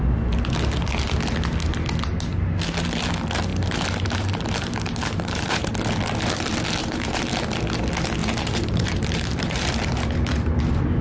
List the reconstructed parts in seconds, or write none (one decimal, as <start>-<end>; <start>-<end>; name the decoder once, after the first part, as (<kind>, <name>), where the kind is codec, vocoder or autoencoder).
3.5-5.7 (vocoder, BigVGAN v2); 6.8-7.3; 8.2-10.5